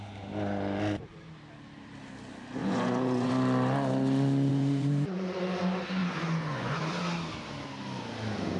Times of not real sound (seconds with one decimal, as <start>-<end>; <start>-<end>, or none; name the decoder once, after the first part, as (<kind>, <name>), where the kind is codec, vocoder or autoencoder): 2.6-3.3 (vocoder, Vocos); 4.5-5.4; 6.0-6.8